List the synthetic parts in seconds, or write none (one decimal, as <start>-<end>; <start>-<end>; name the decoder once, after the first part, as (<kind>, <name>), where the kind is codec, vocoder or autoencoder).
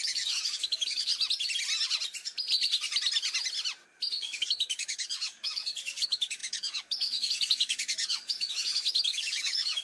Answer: 0.0-1.1 (codec, DAC); 4.1-9.8